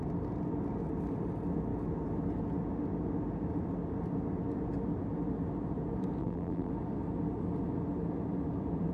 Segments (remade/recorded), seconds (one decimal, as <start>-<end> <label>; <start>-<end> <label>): 0.0-6.2 recorded; 6.2-6.7 remade; 6.7-8.9 recorded